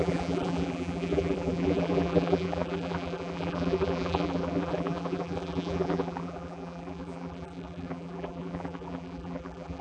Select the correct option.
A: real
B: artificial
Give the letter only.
B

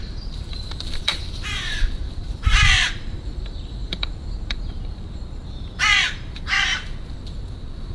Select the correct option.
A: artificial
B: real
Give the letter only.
A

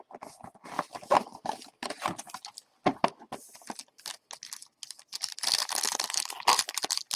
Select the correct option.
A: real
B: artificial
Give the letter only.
A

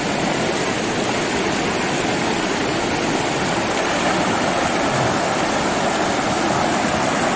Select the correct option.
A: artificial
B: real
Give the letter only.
B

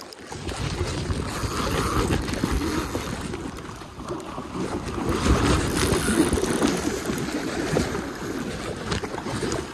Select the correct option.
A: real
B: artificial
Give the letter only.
A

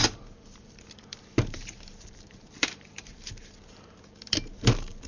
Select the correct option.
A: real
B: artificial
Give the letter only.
B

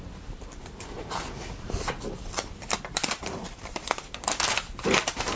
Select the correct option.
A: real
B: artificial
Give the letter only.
B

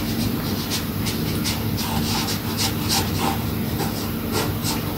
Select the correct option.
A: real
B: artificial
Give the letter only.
A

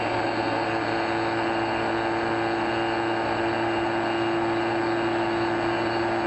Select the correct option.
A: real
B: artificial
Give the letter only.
A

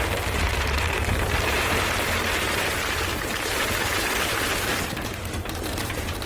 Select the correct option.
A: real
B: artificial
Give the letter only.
B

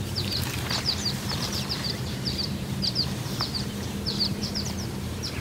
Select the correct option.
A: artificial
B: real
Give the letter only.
A